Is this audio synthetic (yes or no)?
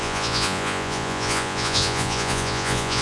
yes